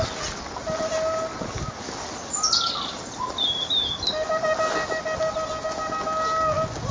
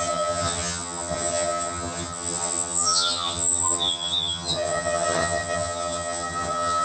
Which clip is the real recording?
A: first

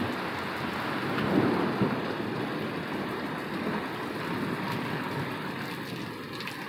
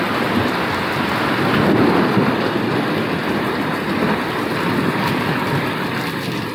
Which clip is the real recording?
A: first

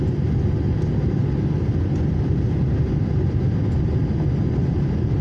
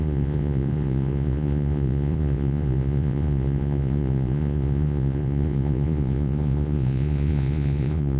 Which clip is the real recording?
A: first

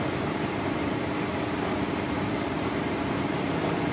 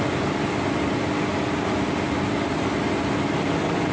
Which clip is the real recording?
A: second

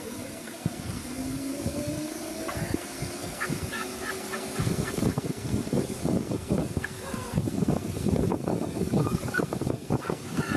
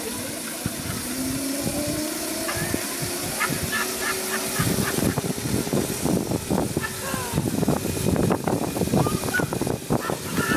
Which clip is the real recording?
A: second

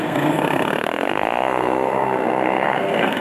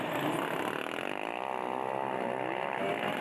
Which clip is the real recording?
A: second